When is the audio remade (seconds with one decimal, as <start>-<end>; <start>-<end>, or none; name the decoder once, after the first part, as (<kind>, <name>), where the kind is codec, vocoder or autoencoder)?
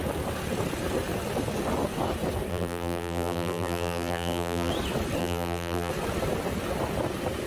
2.5-4.7 (vocoder, BigVGAN v2); 5.2-5.9